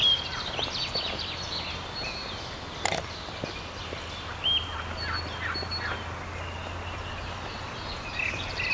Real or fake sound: real